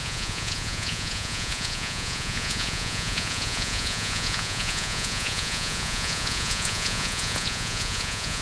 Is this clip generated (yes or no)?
yes